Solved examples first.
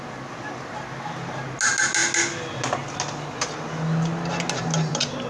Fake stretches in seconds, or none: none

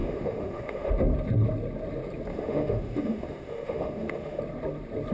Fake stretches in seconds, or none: 0.0-0.9; 2.3-4.4

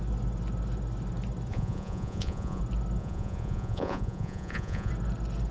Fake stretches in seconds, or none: 1.5-2.6; 3.0-4.9

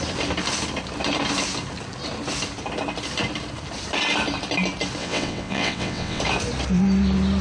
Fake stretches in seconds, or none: 5.0-6.2